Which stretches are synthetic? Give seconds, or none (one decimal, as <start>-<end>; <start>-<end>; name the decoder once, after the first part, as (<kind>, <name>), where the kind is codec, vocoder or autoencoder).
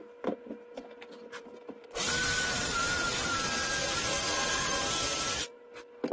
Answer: 1.3-5.0 (vocoder, BigVGAN v2)